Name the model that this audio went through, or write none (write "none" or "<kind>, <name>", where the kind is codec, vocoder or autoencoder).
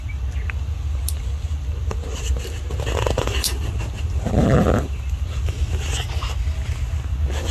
none